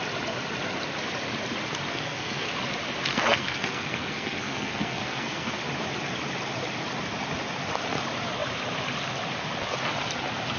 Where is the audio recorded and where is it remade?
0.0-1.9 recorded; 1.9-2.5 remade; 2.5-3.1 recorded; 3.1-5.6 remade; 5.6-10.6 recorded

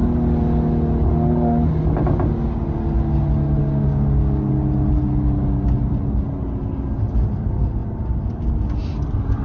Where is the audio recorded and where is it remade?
0.0-3.6 recorded; 3.6-4.5 remade; 4.5-9.4 recorded

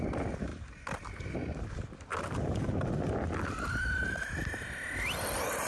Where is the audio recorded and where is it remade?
0.0-5.7 recorded

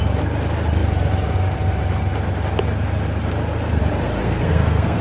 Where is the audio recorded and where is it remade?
0.0-4.2 recorded; 4.2-5.0 remade

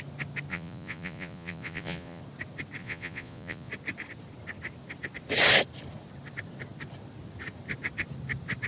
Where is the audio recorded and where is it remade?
0.0-0.5 recorded; 0.5-2.2 remade; 2.2-2.8 recorded; 2.8-3.7 remade; 3.7-8.7 recorded